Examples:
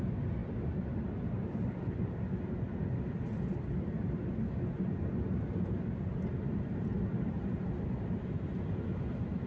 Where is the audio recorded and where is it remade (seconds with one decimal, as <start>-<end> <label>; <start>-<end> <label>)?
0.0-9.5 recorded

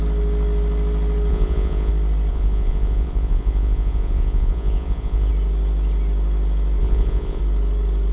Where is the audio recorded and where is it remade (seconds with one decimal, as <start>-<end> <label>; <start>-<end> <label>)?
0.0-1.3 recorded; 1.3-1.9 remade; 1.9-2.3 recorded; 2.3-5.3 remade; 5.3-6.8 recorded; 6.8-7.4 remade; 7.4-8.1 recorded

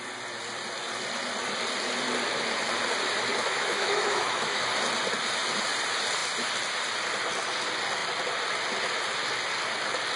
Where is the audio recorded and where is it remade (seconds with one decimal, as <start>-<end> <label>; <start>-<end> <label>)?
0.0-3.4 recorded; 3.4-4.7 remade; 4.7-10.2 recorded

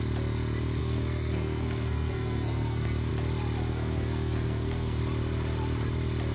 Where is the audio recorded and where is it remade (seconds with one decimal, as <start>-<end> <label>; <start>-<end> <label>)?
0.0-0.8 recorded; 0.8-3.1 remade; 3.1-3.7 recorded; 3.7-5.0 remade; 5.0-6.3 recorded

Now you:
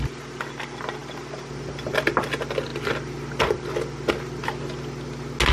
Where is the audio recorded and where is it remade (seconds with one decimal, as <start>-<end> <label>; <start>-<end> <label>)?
0.0-5.5 recorded